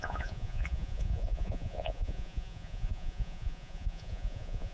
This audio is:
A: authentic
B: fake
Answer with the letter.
B